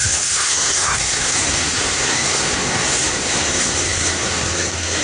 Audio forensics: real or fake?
fake